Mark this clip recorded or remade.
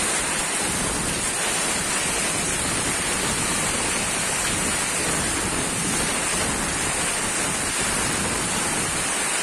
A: recorded